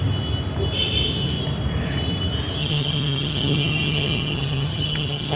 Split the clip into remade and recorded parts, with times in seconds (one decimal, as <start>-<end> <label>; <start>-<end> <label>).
0.0-2.6 recorded; 2.6-5.4 remade